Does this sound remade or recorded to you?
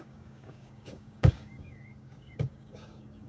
remade